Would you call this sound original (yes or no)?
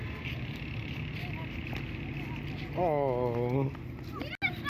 yes